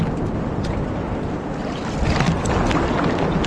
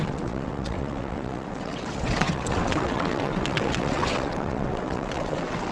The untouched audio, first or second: first